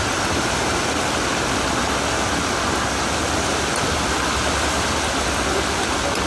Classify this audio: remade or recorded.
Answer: recorded